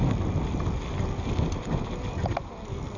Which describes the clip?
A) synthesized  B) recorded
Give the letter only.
B